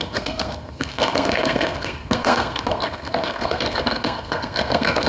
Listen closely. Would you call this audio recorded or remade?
remade